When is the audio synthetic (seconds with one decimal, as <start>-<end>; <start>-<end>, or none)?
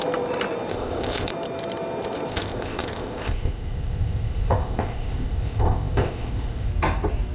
0.7-1.3; 2.3-6.7